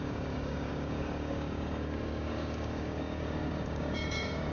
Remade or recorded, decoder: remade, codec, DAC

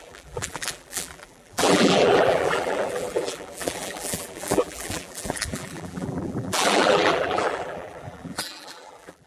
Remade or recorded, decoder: remade, vocoder, BigVGAN v2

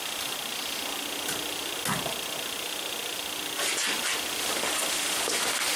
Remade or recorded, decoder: recorded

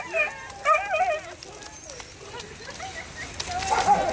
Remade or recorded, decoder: recorded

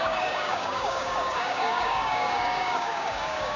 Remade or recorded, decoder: remade, codec, DAC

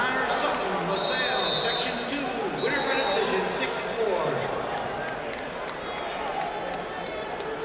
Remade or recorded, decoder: recorded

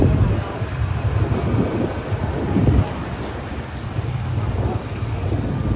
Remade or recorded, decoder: recorded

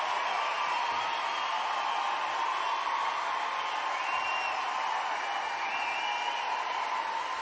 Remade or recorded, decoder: recorded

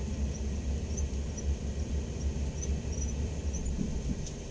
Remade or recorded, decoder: recorded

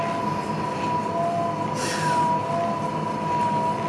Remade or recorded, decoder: recorded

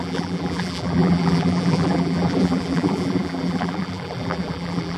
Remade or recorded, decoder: remade, vocoder, BigVGAN v2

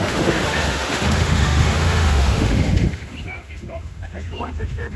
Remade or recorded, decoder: remade, autoencoder, DAC-VAE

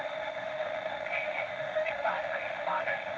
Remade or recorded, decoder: remade, autoencoder, DAC-VAE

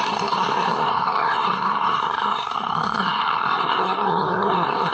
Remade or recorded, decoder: remade, codec, SNAC